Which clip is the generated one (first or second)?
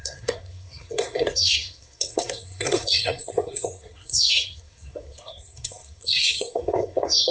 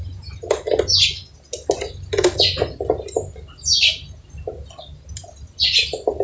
first